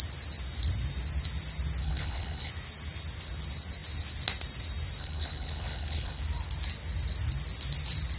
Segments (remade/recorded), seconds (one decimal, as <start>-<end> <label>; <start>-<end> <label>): 0.0-1.8 recorded; 1.8-2.5 remade; 2.5-5.0 recorded; 5.0-6.2 remade; 6.2-8.2 recorded